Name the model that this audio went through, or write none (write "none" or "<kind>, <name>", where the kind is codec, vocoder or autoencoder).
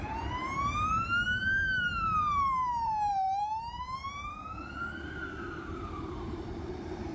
vocoder, BigVGAN v2